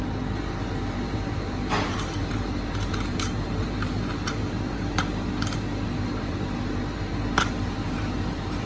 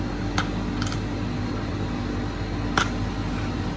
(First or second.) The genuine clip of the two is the second